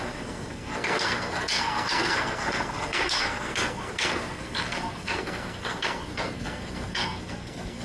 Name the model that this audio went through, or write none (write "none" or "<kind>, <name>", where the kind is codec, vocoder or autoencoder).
codec, SNAC